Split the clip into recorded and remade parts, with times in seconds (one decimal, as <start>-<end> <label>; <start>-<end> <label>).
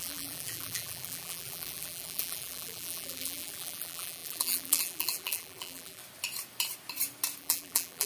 0.0-6.0 remade; 6.0-7.4 recorded; 7.4-8.1 remade